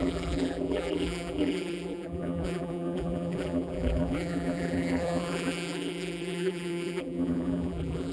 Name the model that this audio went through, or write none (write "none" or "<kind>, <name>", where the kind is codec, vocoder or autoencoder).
vocoder, BigVGAN v2